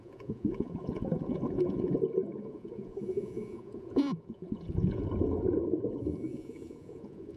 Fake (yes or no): yes